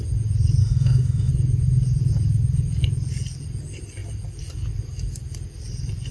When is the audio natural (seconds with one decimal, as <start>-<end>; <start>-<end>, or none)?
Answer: 0.0-0.6; 1.3-6.1